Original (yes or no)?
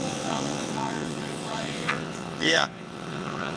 no